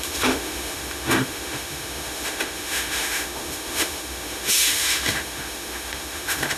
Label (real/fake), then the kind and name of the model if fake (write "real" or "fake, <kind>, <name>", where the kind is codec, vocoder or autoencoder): fake, autoencoder, DAC-VAE